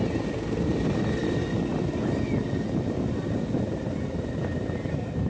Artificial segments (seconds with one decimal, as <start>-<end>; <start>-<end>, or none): none